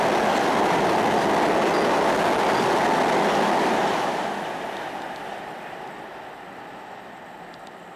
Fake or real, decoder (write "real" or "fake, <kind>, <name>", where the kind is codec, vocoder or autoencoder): real